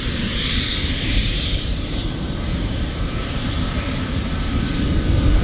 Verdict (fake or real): fake